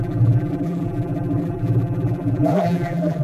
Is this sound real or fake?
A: fake